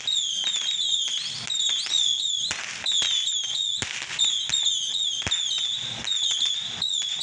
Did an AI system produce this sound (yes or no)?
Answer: no